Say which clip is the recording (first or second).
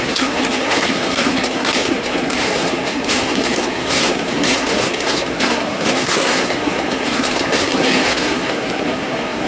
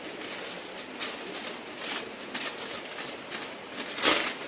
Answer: second